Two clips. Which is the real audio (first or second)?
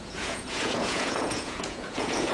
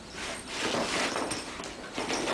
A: second